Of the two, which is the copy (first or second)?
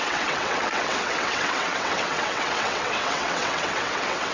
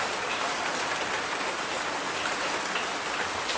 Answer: first